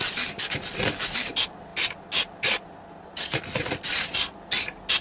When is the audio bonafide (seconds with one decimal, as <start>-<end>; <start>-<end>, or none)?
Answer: 0.0-5.0